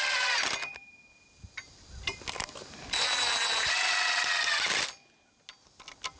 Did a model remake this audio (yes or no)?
no